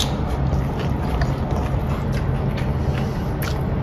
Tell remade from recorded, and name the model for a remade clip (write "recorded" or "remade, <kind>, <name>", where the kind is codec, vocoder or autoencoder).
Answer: recorded